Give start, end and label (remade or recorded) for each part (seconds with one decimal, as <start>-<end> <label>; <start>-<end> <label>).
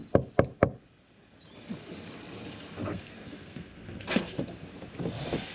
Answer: 0.0-2.9 recorded; 2.9-4.4 remade; 4.4-5.5 recorded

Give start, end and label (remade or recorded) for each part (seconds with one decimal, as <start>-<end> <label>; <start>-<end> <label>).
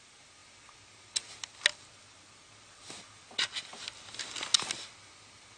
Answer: 0.0-5.6 recorded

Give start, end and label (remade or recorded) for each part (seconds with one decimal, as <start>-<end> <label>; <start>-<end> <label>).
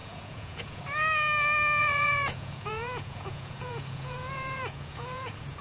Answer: 0.0-0.8 remade; 0.8-1.8 recorded; 1.8-5.6 remade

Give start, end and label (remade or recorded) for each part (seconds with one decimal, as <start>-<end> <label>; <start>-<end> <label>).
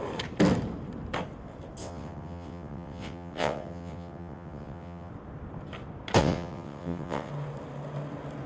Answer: 0.0-1.8 recorded; 1.8-5.1 remade; 5.1-6.2 recorded; 6.2-7.3 remade; 7.3-8.5 recorded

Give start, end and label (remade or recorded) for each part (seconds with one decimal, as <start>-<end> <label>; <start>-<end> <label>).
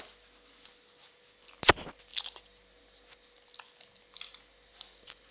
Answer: 0.0-5.3 recorded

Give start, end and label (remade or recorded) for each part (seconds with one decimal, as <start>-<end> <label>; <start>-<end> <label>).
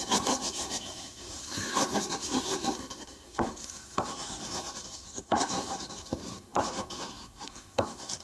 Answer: 0.0-8.2 remade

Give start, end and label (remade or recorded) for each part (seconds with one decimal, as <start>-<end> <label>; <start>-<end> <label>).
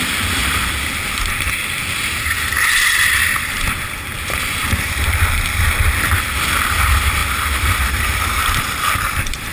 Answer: 0.0-0.4 remade; 0.4-2.2 recorded; 2.2-3.2 remade; 3.2-3.9 recorded; 3.9-9.5 remade